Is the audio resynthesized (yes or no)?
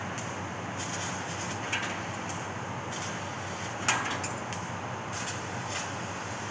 no